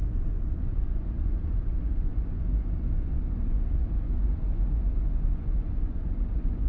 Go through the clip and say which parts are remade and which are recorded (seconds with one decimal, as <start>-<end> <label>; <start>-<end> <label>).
0.0-6.7 remade